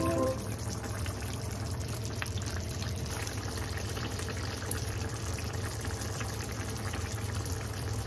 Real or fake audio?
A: fake